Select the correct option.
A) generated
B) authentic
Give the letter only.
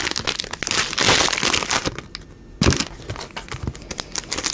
B